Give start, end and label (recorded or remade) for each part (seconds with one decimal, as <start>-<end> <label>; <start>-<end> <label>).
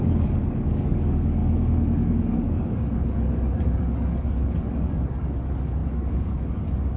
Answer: 0.0-7.0 remade